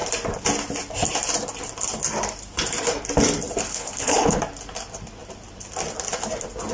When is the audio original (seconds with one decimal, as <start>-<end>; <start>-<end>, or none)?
0.0-3.7; 4.4-6.7